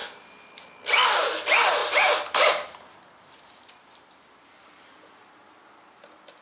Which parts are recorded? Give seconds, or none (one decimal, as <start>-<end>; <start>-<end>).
0.0-6.4